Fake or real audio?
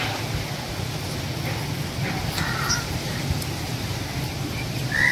real